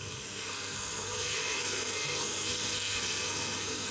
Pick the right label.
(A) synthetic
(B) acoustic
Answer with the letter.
A